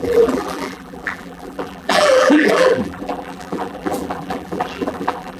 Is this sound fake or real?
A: fake